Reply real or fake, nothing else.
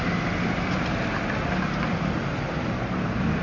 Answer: real